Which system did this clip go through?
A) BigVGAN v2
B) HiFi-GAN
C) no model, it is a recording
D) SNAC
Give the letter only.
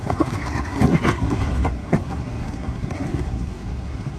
D